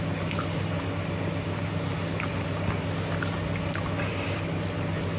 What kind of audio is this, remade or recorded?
recorded